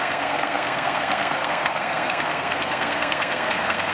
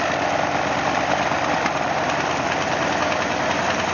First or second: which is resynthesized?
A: first